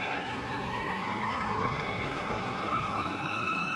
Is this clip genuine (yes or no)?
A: no